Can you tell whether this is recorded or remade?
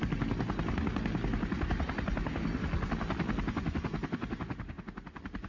recorded